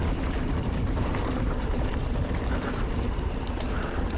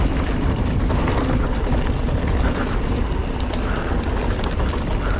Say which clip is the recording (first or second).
second